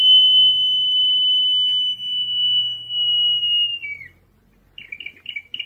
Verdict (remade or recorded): recorded